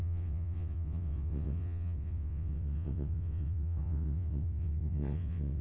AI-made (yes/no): yes